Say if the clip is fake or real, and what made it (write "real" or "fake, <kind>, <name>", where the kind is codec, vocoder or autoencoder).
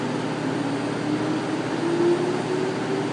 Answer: real